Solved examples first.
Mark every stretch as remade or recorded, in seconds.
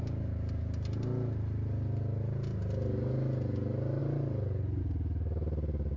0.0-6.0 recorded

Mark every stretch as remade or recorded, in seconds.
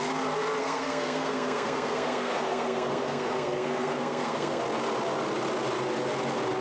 0.0-0.6 recorded; 0.6-4.6 remade; 4.6-6.6 recorded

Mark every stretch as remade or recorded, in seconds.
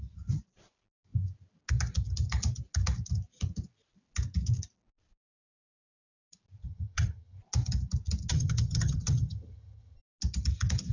0.0-6.6 recorded; 6.6-7.4 remade; 7.4-8.3 recorded; 8.3-10.0 remade; 10.0-10.9 recorded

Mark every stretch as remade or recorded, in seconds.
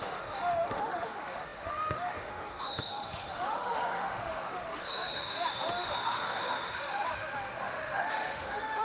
0.0-8.8 remade